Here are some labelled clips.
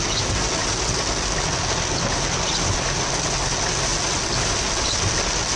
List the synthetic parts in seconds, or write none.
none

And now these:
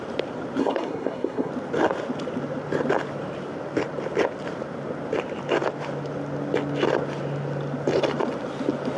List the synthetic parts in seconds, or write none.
0.6-1.5 (codec, SNAC)

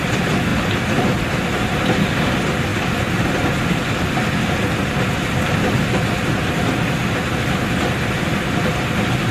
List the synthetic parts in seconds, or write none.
none

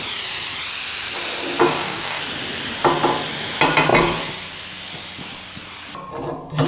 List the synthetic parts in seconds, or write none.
1.6-2.2 (codec, DAC)